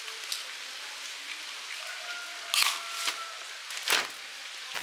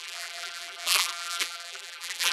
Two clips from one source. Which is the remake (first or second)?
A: second